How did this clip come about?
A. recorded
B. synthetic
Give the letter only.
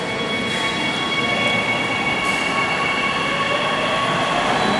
A